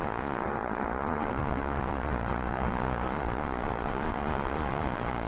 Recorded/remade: remade